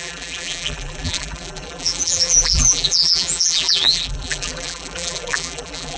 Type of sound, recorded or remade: remade